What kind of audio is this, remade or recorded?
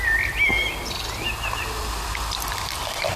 recorded